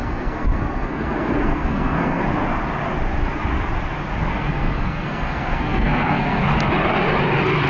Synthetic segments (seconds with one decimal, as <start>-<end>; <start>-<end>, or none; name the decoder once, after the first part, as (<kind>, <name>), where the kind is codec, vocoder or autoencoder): 0.0-2.2 (codec, SNAC); 4.3-6.4